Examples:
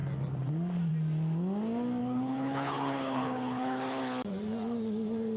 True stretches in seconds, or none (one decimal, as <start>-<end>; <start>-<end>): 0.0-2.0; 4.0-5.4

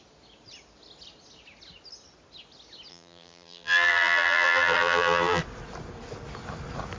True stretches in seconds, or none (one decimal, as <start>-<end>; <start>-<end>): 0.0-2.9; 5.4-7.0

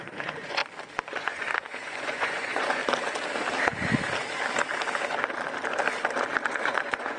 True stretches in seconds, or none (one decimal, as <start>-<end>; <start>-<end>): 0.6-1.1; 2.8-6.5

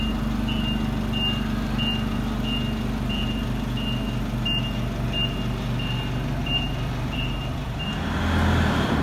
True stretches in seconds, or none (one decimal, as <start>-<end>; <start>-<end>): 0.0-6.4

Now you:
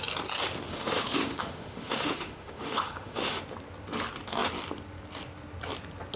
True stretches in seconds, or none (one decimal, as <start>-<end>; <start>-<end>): 0.0-0.7; 3.4-6.2